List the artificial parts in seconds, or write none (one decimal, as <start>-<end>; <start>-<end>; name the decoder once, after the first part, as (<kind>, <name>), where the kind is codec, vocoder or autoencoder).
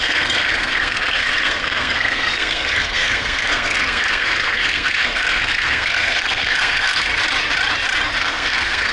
0.0-7.1 (codec, SNAC); 8.2-8.9